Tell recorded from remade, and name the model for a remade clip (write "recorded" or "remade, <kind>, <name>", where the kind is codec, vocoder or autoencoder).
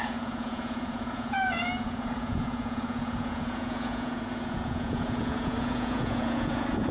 remade, vocoder, Vocos